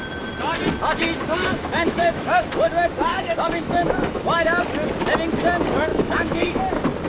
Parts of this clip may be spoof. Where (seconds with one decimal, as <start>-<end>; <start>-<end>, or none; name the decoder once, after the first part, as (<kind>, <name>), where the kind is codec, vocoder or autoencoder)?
1.3-2.4 (autoencoder, DAC-VAE); 3.1-4.6; 5.9-6.6